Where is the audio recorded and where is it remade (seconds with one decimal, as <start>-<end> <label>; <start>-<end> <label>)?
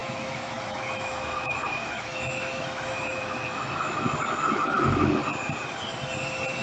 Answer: 0.0-5.2 remade; 5.2-6.6 recorded